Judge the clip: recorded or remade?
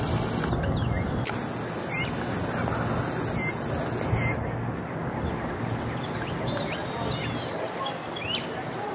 recorded